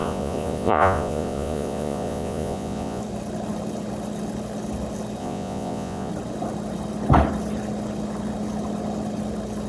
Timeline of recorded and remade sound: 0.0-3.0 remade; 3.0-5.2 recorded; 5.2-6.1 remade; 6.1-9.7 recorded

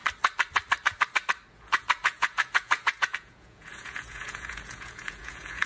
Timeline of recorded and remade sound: 0.0-1.5 recorded; 1.5-5.7 remade

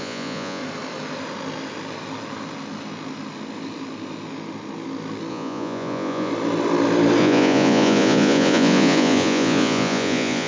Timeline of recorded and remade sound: 0.0-0.6 remade; 0.6-5.3 recorded; 5.3-6.3 remade; 6.3-7.2 recorded; 7.2-10.5 remade